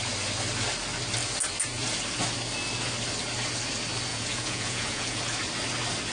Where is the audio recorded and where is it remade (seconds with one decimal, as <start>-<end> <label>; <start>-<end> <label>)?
0.0-4.1 recorded; 4.1-5.2 remade; 5.2-6.1 recorded